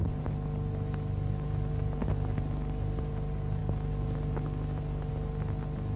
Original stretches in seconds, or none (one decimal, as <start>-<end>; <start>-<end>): 0.0-6.0